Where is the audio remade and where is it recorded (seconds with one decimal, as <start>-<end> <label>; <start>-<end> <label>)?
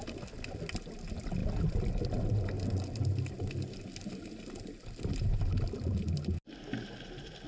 0.0-7.5 recorded